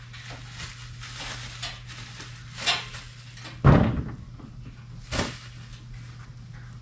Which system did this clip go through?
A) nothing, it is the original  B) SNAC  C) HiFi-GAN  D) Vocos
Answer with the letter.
A